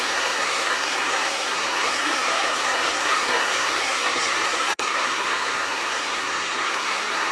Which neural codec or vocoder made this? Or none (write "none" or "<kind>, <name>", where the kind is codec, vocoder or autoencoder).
codec, SNAC